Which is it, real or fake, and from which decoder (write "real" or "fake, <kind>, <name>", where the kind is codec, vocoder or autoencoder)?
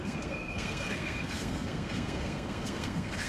fake, codec, SNAC